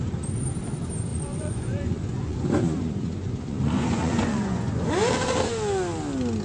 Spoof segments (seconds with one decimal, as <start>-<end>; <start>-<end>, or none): 1.1-4.9